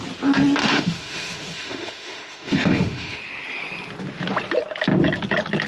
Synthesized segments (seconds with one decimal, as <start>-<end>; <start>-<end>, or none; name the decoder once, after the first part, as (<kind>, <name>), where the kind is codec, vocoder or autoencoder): 0.6-3.2 (autoencoder, DAC-VAE)